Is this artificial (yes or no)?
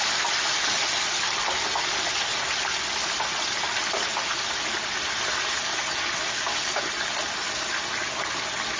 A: no